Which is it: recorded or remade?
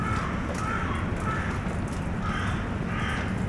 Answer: recorded